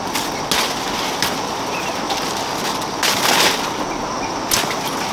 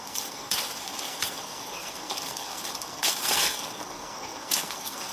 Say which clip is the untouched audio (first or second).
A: first